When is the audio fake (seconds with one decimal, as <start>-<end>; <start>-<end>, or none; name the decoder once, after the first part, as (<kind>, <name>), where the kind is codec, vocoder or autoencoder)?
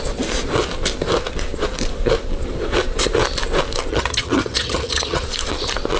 3.9-5.2 (vocoder, HiFi-GAN)